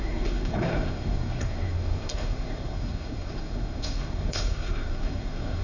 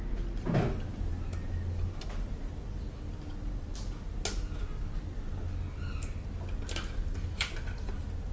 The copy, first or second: first